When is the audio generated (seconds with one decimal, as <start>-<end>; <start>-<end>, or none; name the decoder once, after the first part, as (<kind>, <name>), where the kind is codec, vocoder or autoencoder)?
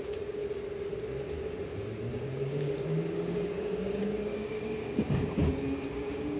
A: 0.0-0.4 (codec, DAC); 2.1-6.4